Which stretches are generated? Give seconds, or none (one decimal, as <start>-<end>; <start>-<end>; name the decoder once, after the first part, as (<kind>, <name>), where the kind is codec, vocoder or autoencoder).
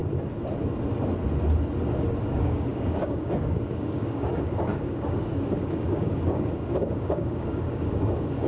2.3-8.5 (codec, DAC)